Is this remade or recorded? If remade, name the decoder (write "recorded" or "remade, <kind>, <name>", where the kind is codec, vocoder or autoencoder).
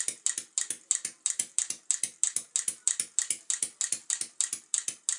recorded